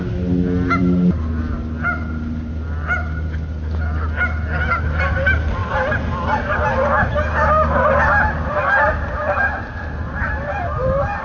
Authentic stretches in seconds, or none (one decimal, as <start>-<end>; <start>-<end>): 0.0-11.2